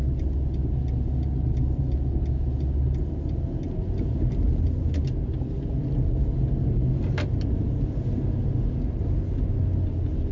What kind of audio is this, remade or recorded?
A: recorded